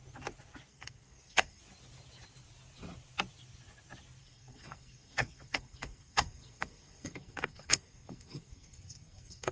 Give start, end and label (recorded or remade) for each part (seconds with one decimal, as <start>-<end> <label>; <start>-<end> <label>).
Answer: 0.0-0.7 recorded; 0.7-1.6 remade; 1.6-4.2 recorded; 4.2-9.5 remade